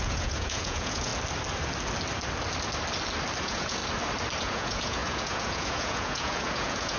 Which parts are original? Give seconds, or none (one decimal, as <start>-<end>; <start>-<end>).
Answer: 1.1-3.4; 3.8-4.4